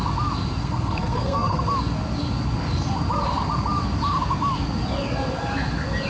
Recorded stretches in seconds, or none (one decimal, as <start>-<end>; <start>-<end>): 0.0-0.6; 1.6-6.1